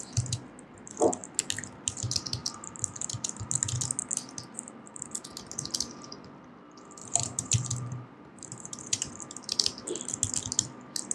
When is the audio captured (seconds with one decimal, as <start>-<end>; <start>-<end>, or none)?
0.0-7.0; 9.1-11.1